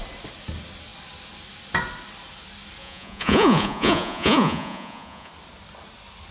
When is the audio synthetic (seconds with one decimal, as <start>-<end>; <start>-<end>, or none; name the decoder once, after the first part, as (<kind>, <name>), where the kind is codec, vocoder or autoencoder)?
2.8-5.3 (vocoder, Vocos)